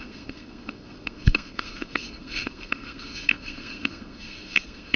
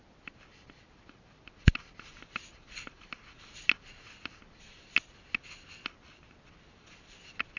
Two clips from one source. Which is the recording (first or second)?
second